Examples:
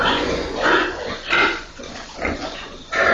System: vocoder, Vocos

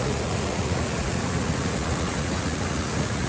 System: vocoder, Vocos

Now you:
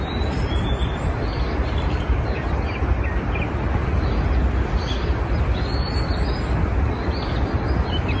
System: none